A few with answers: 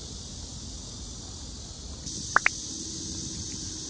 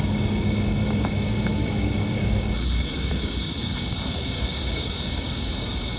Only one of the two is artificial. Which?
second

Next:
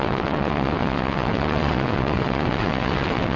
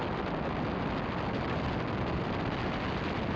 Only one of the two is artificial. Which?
first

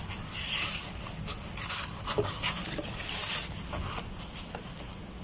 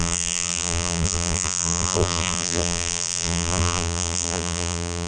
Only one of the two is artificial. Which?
second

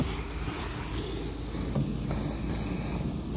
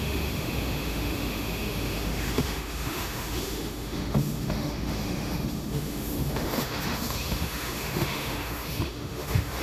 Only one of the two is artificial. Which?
second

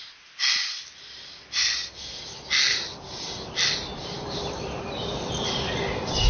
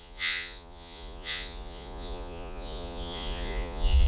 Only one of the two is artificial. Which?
second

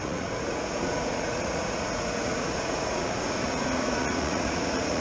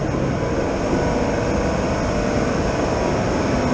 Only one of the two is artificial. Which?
first